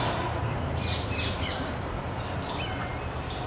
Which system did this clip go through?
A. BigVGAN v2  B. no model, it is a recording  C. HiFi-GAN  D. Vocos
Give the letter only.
B